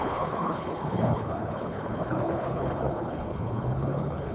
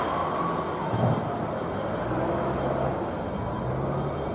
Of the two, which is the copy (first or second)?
first